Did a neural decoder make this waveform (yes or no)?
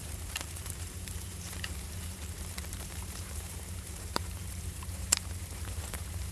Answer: yes